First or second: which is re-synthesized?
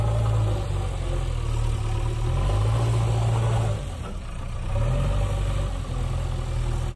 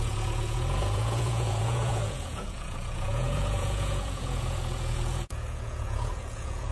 second